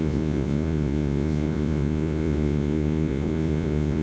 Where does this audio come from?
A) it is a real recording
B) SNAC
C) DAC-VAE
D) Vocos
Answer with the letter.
D